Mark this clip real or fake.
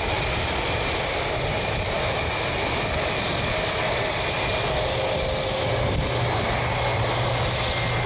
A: real